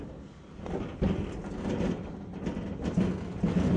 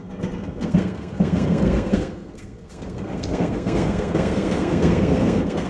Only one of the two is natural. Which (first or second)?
first